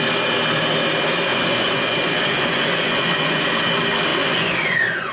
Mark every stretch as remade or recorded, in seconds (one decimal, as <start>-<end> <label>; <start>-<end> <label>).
0.0-1.3 recorded; 1.3-3.4 remade; 3.4-4.1 recorded; 4.1-5.1 remade